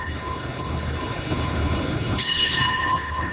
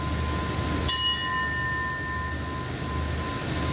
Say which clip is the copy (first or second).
first